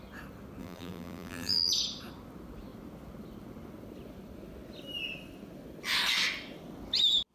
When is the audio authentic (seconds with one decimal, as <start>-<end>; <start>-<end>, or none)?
0.0-0.6; 1.7-7.3